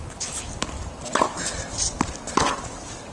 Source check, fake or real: real